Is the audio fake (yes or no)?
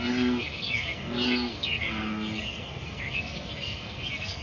yes